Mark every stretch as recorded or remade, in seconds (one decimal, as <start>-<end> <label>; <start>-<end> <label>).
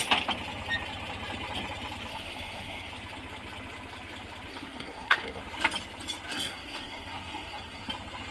0.0-2.1 recorded; 2.1-2.9 remade; 2.9-4.5 recorded; 4.5-5.4 remade; 5.4-6.3 recorded; 6.3-7.9 remade; 7.9-8.3 recorded